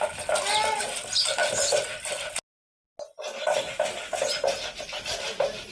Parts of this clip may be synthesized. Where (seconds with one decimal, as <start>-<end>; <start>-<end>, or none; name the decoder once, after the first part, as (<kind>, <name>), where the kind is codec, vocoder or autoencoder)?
none